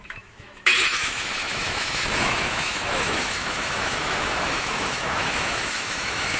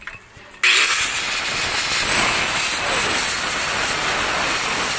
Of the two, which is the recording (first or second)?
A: second